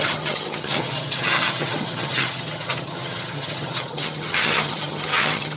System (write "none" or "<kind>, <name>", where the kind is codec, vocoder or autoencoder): vocoder, HiFi-GAN